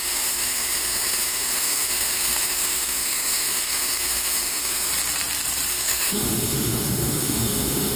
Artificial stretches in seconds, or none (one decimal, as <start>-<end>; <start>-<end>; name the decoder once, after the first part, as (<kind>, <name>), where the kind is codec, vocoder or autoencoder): 0.0-4.9 (autoencoder, DAC-VAE); 5.7-8.0